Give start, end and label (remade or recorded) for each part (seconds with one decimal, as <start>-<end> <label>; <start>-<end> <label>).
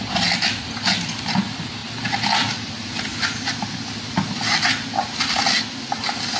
0.0-6.4 recorded